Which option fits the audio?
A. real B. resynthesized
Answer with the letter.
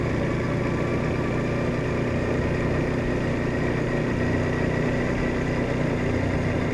A